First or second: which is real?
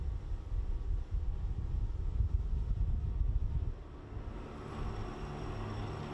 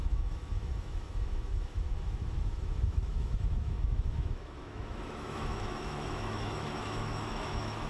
first